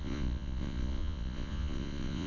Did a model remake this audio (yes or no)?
yes